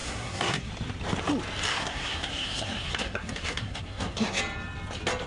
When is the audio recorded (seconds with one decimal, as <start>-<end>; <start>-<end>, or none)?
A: 0.7-1.7; 4.4-5.3